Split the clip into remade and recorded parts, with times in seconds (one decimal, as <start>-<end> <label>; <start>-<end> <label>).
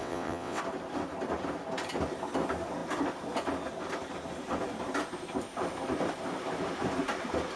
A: 0.0-0.6 remade; 0.6-7.6 recorded